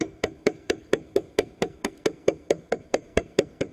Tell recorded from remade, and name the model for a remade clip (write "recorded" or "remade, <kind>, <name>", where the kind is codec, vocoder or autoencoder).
remade, codec, SNAC